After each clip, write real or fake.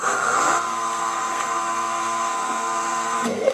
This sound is fake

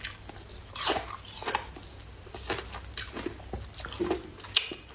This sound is real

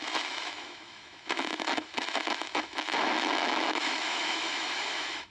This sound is fake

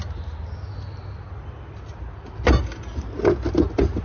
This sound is real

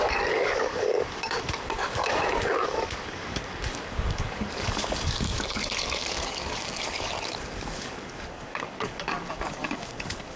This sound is fake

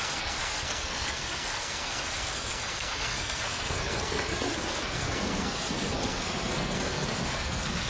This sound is fake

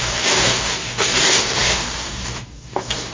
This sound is fake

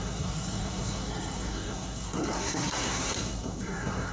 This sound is fake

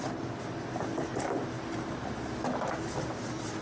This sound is real